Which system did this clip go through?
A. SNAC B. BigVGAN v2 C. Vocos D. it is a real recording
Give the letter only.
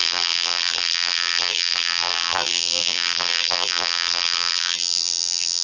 B